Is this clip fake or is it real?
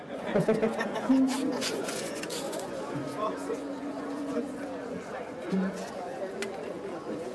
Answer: fake